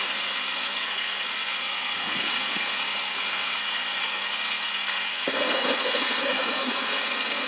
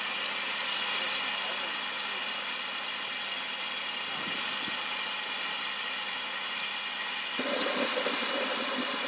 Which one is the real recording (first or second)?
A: second